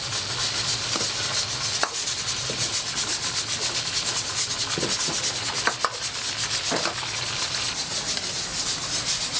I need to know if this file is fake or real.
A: real